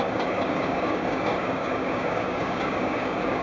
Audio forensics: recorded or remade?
remade